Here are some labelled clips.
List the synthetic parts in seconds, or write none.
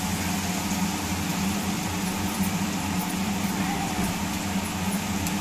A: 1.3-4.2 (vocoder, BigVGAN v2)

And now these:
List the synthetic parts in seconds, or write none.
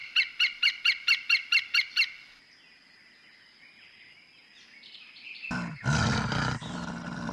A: none